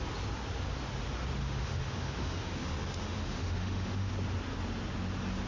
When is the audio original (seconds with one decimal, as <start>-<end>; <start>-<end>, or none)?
0.0-1.4; 4.1-5.5